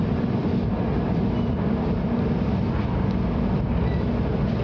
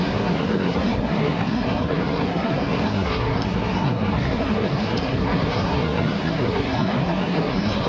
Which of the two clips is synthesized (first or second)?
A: second